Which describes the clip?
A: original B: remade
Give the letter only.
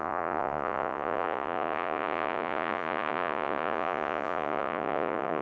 B